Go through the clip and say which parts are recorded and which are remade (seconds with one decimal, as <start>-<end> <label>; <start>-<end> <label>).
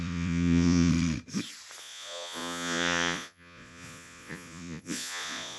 0.0-0.9 remade; 0.9-1.8 recorded; 1.8-5.6 remade